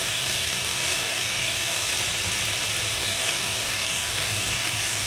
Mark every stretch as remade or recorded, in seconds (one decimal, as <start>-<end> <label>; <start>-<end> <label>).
0.0-1.9 remade; 1.9-2.9 recorded; 2.9-5.1 remade